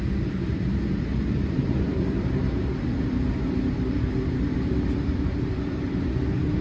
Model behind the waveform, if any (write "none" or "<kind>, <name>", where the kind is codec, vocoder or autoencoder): vocoder, BigVGAN v2